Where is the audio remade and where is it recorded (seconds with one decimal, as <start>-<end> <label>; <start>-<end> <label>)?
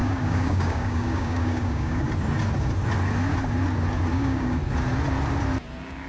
0.0-2.0 remade; 2.0-4.1 recorded; 4.1-4.6 remade; 4.6-6.1 recorded